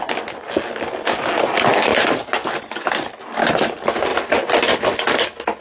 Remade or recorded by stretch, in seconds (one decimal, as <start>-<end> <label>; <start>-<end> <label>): 0.0-5.6 recorded

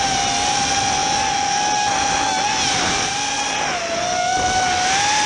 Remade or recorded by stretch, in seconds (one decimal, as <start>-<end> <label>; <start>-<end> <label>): 0.0-5.3 recorded

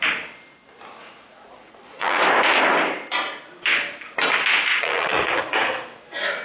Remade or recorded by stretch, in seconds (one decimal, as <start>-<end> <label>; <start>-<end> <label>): 0.0-1.0 recorded; 1.0-2.2 remade; 2.2-4.7 recorded; 4.7-5.4 remade; 5.4-6.4 recorded

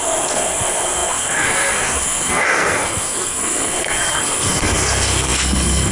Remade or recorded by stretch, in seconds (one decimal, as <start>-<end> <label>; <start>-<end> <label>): 0.0-5.9 remade

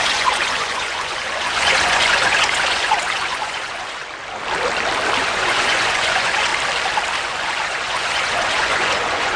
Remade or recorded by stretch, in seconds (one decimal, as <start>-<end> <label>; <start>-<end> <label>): 0.0-4.0 remade; 4.0-5.2 recorded; 5.2-6.5 remade; 6.5-7.2 recorded; 7.2-9.4 remade